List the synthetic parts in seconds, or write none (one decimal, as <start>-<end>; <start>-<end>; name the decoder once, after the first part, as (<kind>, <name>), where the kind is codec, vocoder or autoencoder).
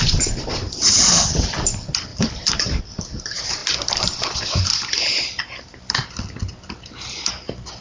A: 2.1-2.8 (vocoder, BigVGAN v2)